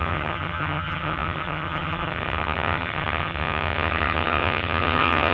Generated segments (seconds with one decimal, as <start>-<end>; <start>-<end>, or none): 0.0-5.3